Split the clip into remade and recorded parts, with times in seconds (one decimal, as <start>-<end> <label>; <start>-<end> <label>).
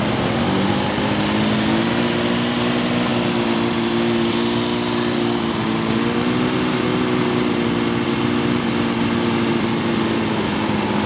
0.0-11.1 recorded